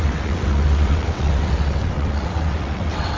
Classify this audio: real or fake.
fake